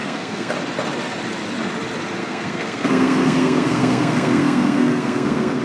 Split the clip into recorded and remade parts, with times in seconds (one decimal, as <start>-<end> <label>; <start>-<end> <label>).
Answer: 0.0-0.5 remade; 0.5-2.2 recorded; 2.2-5.6 remade